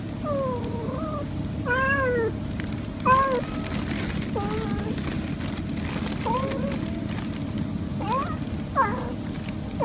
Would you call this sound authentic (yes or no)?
yes